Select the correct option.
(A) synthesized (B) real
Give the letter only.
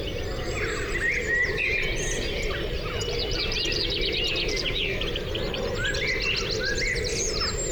B